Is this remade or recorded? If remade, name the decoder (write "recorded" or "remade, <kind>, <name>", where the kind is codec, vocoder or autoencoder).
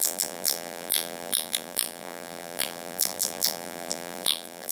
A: remade, vocoder, BigVGAN v2